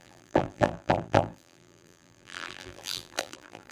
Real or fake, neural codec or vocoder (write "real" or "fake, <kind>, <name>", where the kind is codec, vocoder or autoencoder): fake, vocoder, BigVGAN v2